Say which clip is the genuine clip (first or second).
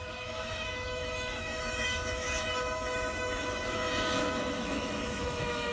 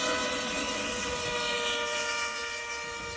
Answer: second